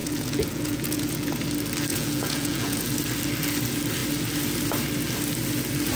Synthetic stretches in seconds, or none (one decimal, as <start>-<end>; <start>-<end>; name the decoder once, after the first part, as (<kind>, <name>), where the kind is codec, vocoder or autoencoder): 0.0-1.3 (vocoder, Vocos); 1.9-2.9